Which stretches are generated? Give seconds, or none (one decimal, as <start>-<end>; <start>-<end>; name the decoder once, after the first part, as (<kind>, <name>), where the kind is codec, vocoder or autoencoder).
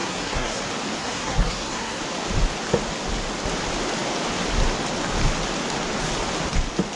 0.0-0.6 (codec, SNAC); 1.0-2.0